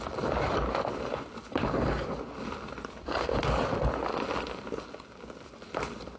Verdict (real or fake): real